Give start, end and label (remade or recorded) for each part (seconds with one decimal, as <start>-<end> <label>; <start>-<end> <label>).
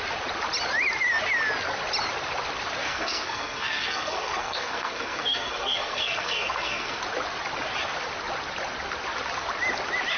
0.0-2.8 recorded; 2.8-7.0 remade; 7.0-10.2 recorded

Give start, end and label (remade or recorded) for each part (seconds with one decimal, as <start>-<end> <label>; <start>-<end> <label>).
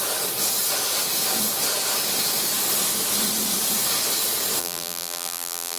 0.0-4.6 recorded; 4.6-5.8 remade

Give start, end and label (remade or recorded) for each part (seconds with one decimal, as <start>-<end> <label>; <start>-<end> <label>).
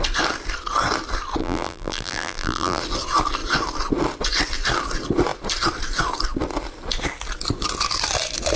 0.0-1.4 recorded; 1.4-2.8 remade; 2.8-8.6 recorded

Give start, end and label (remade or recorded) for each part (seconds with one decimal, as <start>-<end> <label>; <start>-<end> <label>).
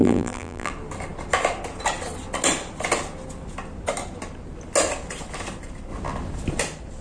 0.0-0.7 remade; 0.7-7.0 recorded